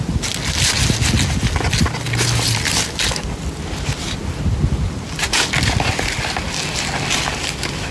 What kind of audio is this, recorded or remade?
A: recorded